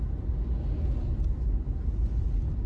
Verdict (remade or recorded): recorded